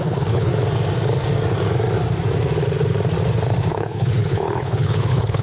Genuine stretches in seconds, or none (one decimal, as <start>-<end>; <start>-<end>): 0.5-3.7